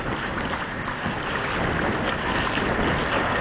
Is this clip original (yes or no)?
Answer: yes